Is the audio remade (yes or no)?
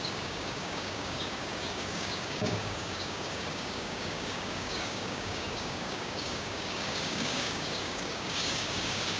yes